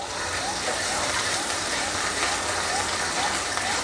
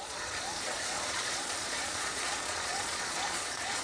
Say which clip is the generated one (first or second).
second